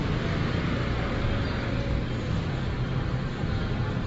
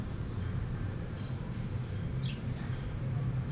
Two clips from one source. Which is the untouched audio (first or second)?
first